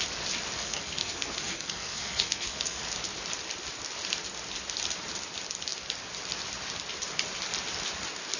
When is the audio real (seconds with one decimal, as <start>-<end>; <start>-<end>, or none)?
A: 0.0-0.6; 2.8-8.4